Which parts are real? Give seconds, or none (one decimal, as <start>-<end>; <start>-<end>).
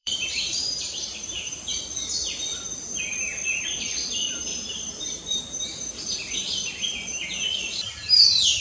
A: 1.4-4.5; 5.4-8.6